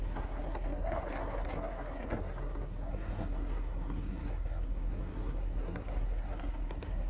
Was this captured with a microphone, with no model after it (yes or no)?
no